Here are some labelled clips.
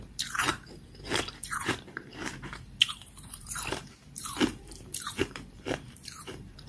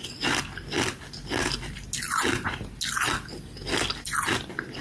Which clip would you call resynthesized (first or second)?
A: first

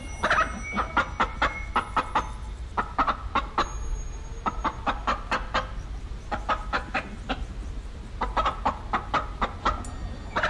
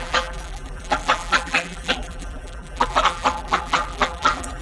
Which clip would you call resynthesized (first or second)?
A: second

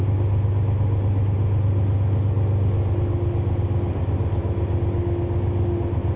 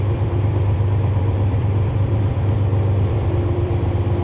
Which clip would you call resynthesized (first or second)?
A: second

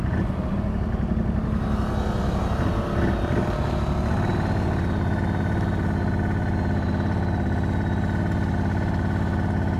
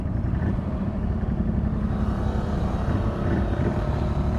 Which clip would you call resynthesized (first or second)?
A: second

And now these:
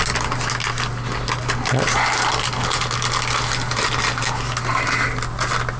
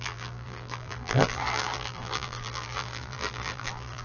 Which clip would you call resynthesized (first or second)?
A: second